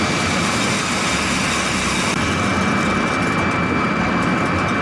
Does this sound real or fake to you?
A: real